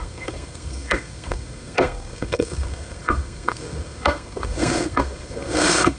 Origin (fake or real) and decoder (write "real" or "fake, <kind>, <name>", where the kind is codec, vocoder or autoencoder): fake, codec, SNAC